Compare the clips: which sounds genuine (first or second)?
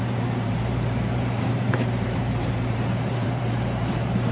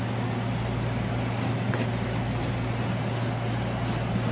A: second